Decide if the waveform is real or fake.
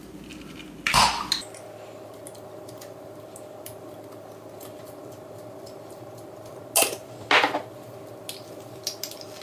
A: real